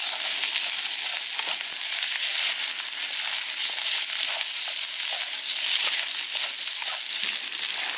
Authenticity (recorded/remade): recorded